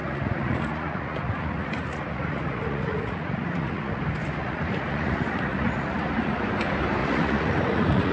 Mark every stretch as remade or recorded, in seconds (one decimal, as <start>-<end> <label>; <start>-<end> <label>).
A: 0.0-4.0 remade; 4.0-4.4 recorded; 4.4-6.4 remade; 6.4-7.0 recorded; 7.0-8.1 remade